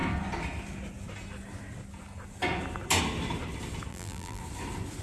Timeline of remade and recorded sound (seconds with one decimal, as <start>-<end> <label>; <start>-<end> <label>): 0.0-3.9 recorded; 3.9-4.4 remade; 4.4-5.0 recorded